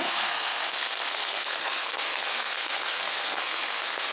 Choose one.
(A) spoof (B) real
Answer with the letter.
A